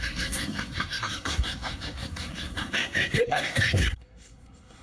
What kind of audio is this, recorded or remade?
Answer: remade